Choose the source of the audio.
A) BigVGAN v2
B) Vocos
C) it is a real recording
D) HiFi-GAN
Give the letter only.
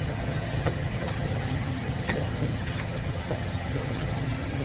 D